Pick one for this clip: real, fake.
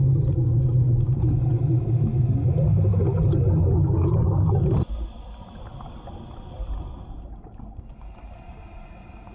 real